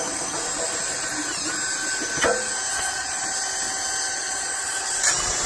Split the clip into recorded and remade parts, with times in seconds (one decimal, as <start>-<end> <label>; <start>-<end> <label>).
0.0-2.7 recorded; 2.7-3.2 remade; 3.2-4.1 recorded; 4.1-5.0 remade; 5.0-5.5 recorded